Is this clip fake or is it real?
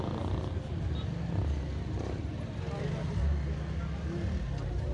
real